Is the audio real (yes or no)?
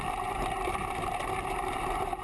no